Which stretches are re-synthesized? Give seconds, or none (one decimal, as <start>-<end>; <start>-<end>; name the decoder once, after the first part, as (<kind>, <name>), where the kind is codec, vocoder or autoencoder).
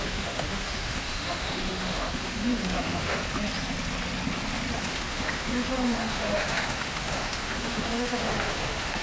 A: 0.0-3.2 (autoencoder, DAC-VAE); 4.8-9.0